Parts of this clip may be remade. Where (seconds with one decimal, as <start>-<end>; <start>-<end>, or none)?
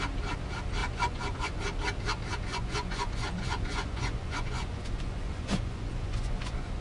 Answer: 0.8-1.6; 2.5-6.8